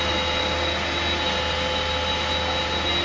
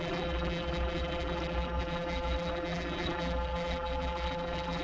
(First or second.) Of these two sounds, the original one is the first